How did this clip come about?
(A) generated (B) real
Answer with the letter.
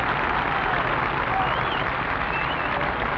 B